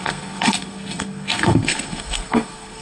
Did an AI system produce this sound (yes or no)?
yes